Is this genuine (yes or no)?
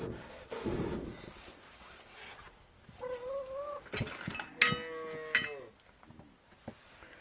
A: yes